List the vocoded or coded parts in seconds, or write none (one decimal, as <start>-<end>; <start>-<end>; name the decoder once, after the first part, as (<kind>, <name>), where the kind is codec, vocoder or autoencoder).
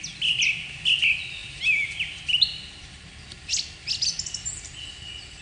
none